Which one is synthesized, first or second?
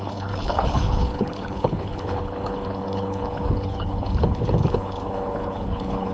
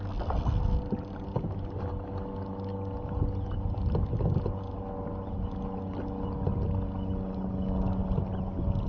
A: first